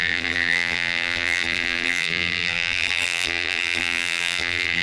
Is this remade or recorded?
remade